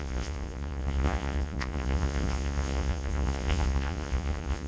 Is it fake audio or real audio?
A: fake